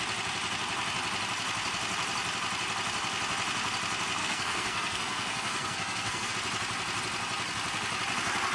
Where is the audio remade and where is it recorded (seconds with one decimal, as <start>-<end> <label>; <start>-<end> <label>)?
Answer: 0.0-4.2 recorded; 4.2-6.3 remade; 6.3-8.5 recorded